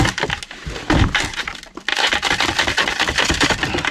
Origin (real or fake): real